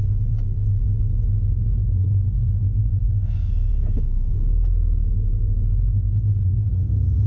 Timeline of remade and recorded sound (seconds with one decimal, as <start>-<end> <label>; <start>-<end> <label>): 0.0-2.8 recorded; 2.8-3.7 remade; 3.7-6.5 recorded; 6.5-7.3 remade